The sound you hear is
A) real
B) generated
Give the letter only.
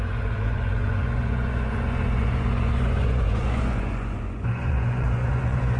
B